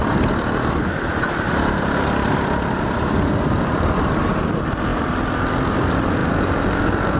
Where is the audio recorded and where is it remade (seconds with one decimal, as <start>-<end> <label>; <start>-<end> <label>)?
0.0-4.1 remade; 4.1-4.9 recorded; 4.9-5.8 remade; 5.8-7.2 recorded